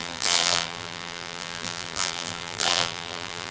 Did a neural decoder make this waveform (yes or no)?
yes